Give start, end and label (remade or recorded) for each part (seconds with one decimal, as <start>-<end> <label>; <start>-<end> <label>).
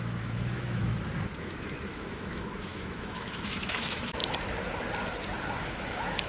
0.0-0.9 remade; 0.9-1.4 recorded; 1.4-4.2 remade; 4.2-5.6 recorded; 5.6-6.3 remade